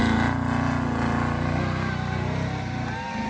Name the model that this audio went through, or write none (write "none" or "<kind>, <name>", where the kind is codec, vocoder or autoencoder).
none